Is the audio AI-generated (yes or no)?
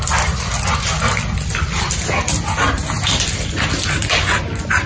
no